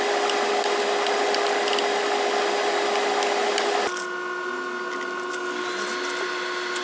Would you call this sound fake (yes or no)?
no